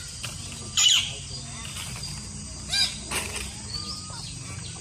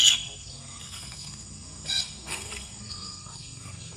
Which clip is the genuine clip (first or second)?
first